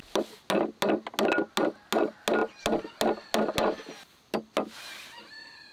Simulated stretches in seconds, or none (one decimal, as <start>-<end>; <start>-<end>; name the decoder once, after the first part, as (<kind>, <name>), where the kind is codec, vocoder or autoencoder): none